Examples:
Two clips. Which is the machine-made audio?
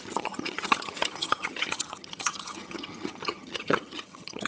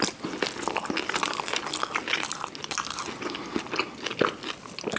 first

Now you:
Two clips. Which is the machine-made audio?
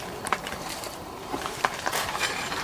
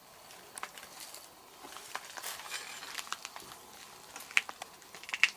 first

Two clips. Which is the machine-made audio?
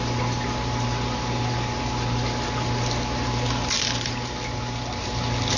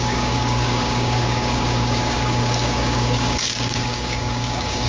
second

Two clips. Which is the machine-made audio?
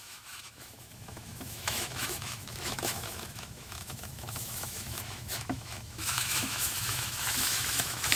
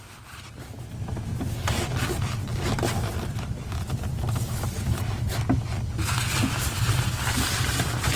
first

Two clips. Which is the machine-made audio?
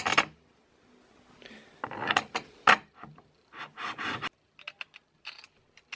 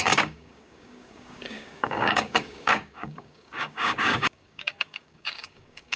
second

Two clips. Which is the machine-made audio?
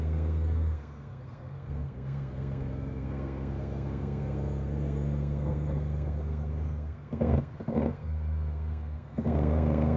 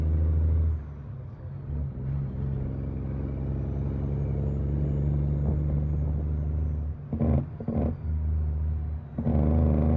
first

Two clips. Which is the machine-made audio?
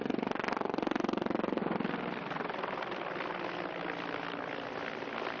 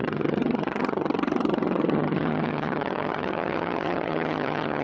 second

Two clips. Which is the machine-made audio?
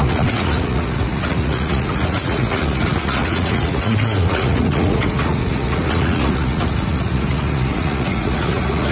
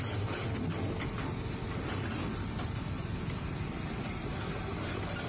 first